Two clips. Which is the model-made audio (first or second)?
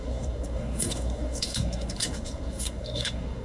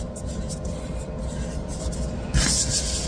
first